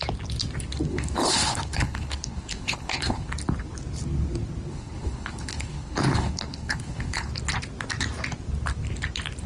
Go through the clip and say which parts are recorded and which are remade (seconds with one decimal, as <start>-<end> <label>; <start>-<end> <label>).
0.0-0.9 recorded; 0.9-3.3 remade; 3.3-4.7 recorded; 4.7-7.3 remade; 7.3-9.5 recorded